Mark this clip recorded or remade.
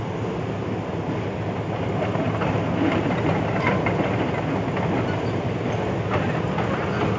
recorded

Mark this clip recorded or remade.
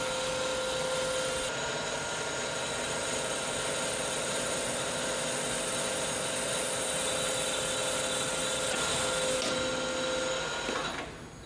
recorded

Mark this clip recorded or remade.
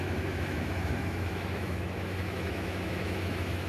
remade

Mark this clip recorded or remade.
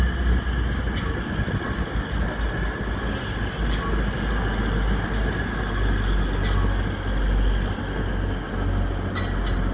recorded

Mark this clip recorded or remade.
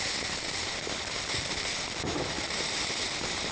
recorded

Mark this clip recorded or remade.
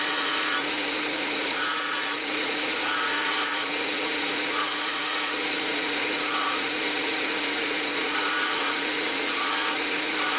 remade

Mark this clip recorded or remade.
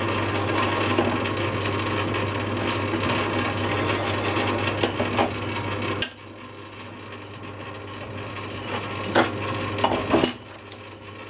recorded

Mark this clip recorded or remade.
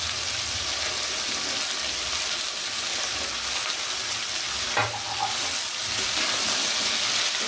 recorded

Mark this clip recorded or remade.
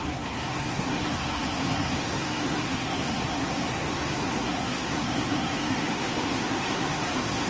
remade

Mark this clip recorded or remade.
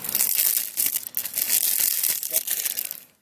recorded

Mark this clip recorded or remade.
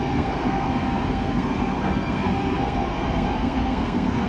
remade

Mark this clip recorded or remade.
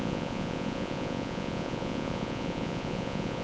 remade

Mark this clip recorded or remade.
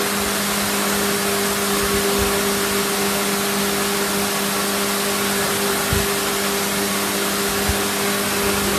recorded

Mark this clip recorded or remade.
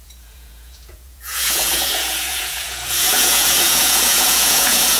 remade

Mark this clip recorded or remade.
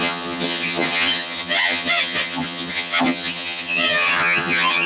remade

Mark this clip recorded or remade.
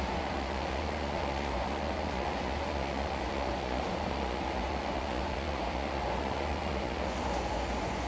remade